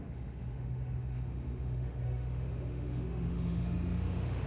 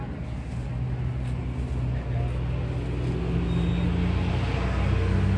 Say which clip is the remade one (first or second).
first